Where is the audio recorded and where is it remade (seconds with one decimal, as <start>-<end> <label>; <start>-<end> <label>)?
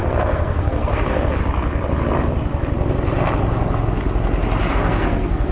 0.0-1.4 remade; 1.4-4.7 recorded; 4.7-5.5 remade